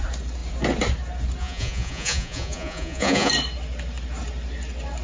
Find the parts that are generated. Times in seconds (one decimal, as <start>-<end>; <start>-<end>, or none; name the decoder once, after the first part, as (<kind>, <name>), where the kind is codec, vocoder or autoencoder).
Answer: 1.4-3.3 (vocoder, Vocos)